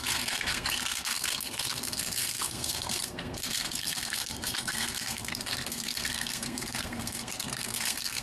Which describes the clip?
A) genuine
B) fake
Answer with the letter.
B